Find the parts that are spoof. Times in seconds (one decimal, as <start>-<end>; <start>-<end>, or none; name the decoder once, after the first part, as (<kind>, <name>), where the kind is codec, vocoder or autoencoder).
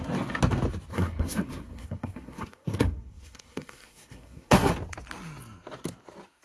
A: 0.9-4.7 (codec, SNAC)